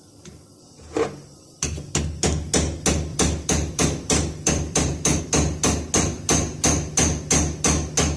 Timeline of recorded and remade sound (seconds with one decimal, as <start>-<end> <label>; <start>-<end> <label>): 0.0-3.1 recorded; 3.1-5.2 remade; 5.2-8.2 recorded